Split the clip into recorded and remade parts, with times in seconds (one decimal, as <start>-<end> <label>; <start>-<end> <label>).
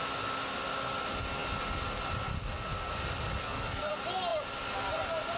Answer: 0.0-3.4 recorded; 3.4-3.9 remade; 3.9-5.4 recorded